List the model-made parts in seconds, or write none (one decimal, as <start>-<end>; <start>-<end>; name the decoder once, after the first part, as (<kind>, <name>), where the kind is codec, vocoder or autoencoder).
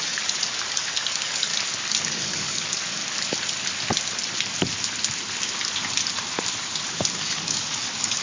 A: 0.0-1.5 (codec, DAC); 2.0-3.0; 7.2-8.2